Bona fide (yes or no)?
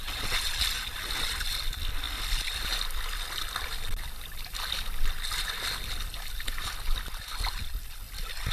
yes